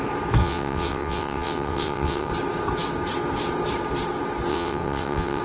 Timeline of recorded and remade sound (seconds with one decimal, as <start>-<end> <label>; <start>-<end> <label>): 0.0-0.4 recorded; 0.4-2.3 remade; 2.3-4.5 recorded; 4.5-5.4 remade

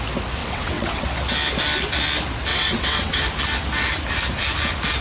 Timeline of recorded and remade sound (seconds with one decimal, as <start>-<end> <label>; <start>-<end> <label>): 0.0-0.4 recorded; 0.4-1.0 remade; 1.0-2.5 recorded; 2.5-3.2 remade; 3.2-5.0 recorded